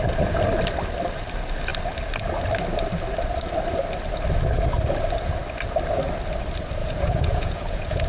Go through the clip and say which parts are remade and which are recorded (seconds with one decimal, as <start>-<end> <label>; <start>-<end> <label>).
0.0-6.8 recorded; 6.8-8.1 remade